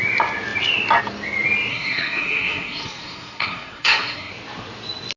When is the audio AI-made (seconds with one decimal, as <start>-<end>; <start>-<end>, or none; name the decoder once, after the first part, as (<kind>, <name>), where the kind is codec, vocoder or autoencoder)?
1.7-4.3 (codec, SNAC)